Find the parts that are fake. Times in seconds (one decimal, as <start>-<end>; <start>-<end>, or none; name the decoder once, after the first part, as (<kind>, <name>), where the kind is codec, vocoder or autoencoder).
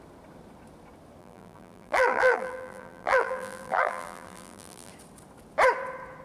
1.2-4.9 (vocoder, BigVGAN v2)